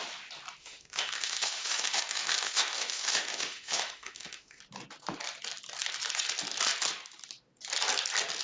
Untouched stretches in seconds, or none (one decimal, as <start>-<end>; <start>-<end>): 0.0-0.6; 4.6-8.4